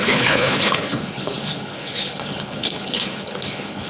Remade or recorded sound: remade